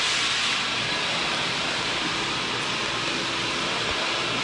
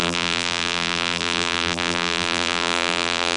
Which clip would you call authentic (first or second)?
first